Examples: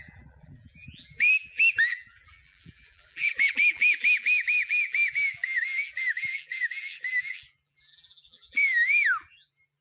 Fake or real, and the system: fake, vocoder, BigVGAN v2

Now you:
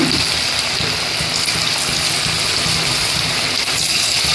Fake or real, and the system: real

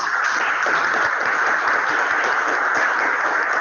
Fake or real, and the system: real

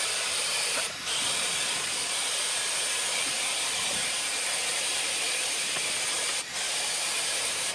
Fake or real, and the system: fake, vocoder, BigVGAN v2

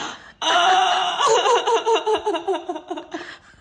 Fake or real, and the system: fake, vocoder, BigVGAN v2